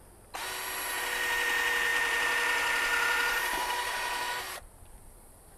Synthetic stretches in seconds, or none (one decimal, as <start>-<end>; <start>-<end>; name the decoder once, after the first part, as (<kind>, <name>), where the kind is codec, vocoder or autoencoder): 1.9-5.6 (vocoder, BigVGAN v2)